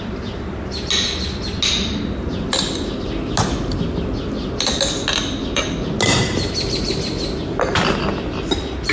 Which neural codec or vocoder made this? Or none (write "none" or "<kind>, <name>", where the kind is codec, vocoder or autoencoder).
none